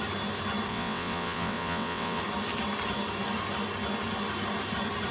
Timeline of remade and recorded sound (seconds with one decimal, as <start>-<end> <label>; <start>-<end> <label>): 0.0-0.7 recorded; 0.7-2.2 remade; 2.2-5.1 recorded